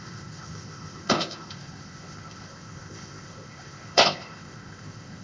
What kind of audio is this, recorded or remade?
remade